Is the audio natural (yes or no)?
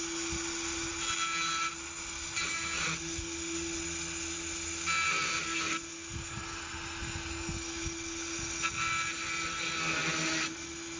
yes